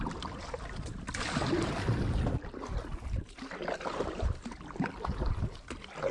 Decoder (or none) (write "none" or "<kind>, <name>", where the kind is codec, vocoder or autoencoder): none